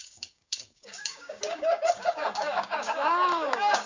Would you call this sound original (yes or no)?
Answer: no